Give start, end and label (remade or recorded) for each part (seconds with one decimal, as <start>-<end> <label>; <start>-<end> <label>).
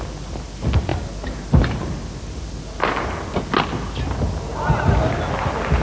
0.0-5.8 recorded